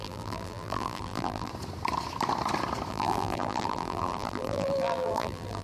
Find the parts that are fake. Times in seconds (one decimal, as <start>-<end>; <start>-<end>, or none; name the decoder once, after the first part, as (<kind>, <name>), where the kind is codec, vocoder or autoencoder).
0.0-1.5 (vocoder, BigVGAN v2); 2.9-5.6